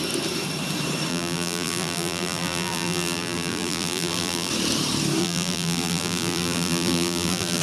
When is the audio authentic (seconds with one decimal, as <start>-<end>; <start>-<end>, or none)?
0.0-1.1; 4.5-5.2